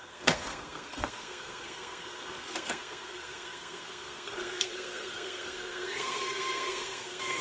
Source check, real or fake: fake